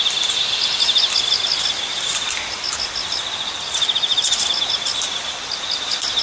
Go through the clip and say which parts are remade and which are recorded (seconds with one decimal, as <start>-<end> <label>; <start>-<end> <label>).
0.0-6.2 recorded